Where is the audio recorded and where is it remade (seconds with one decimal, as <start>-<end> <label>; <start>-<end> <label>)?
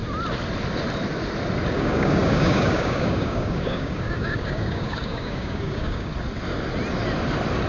0.0-1.7 recorded; 1.7-6.1 remade; 6.1-7.7 recorded